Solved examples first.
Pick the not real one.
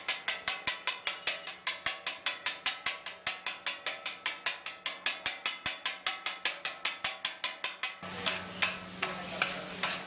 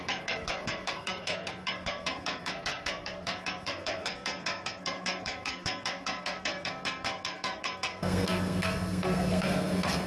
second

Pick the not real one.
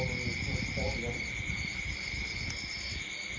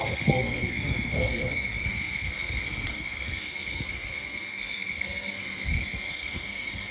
second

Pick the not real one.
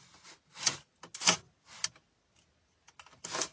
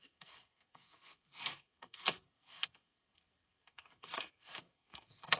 second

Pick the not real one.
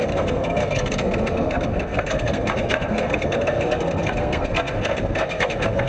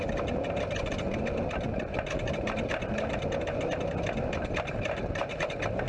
first